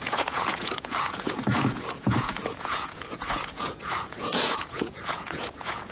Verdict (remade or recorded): remade